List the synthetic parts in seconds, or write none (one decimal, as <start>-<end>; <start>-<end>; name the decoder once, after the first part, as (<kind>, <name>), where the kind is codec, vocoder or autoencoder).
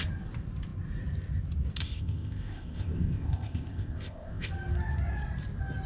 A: 1.8-4.5 (codec, ZipCodec)